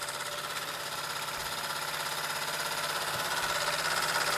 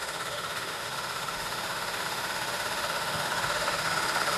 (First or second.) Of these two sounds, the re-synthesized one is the second